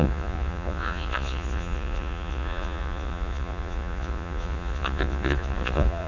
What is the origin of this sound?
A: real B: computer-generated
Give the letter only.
B